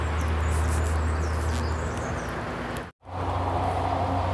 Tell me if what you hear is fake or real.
real